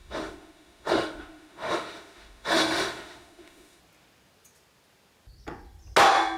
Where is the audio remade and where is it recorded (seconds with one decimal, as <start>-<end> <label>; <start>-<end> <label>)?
0.0-3.8 remade; 3.8-6.4 recorded